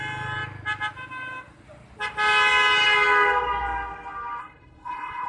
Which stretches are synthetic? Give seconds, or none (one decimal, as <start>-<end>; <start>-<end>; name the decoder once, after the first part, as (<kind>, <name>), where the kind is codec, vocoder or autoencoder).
4.4-5.3 (codec, HILCodec)